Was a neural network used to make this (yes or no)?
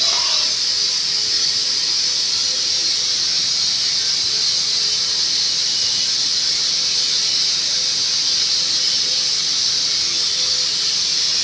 no